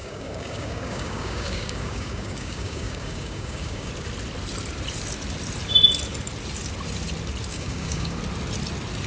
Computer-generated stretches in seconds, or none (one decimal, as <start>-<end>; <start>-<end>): 0.0-3.9; 7.5-8.2